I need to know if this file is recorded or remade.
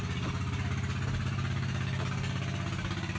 recorded